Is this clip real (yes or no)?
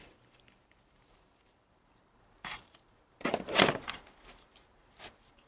no